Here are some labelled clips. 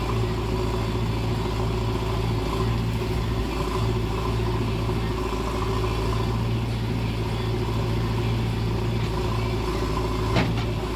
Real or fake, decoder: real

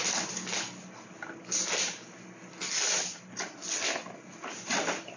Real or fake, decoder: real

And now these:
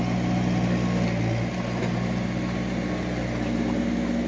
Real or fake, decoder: real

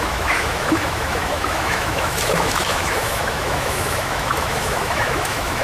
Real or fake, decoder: fake, autoencoder, DAC-VAE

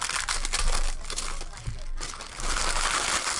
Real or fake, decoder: real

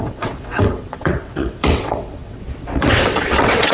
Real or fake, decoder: fake, vocoder, WaveNeXt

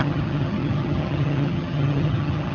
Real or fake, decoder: fake, vocoder, HiFi-GAN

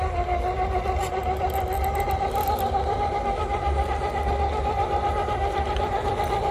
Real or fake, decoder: real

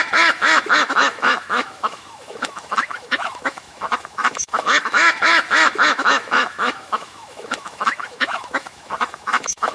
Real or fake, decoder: fake, autoencoder, DAC-VAE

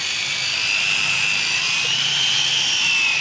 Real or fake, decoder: real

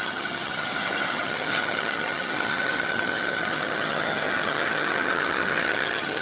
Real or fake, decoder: fake, vocoder, HiFi-GAN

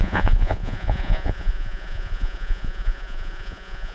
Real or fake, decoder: fake, vocoder, Vocos